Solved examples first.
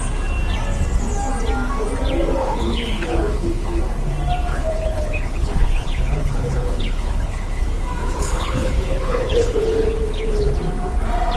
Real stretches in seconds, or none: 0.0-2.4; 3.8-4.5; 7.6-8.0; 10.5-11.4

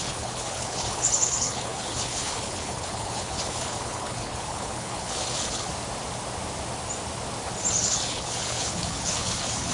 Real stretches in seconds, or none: 5.7-7.8

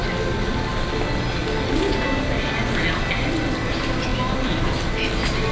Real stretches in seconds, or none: 0.0-5.5